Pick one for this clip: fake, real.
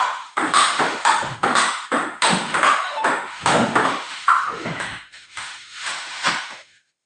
fake